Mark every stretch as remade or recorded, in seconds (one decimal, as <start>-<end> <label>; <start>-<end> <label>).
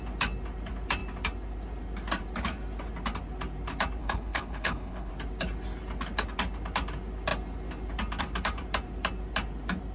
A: 0.0-4.0 recorded; 4.0-5.1 remade; 5.1-9.9 recorded